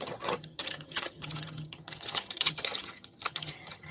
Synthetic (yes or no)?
yes